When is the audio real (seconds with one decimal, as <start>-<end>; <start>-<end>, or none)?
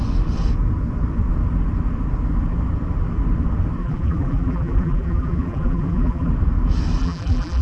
0.0-3.8; 6.3-7.0